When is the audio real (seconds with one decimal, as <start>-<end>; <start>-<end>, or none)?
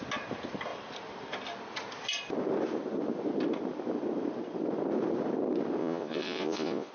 0.0-5.8